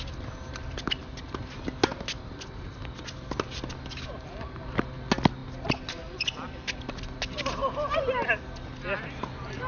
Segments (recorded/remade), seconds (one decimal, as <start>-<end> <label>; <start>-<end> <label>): 0.0-9.7 recorded